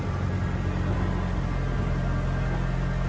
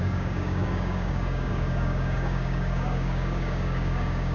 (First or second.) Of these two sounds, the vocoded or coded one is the second